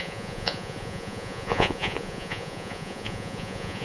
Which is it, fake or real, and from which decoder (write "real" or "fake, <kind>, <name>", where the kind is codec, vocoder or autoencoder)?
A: fake, vocoder, Vocos